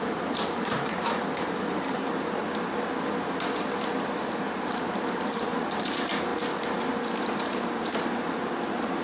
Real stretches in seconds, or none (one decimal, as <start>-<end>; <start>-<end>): 2.4-4.7; 6.3-8.4